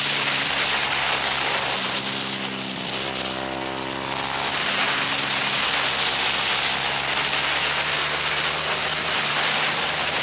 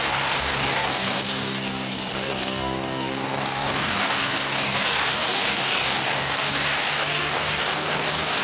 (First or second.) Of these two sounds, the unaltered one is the first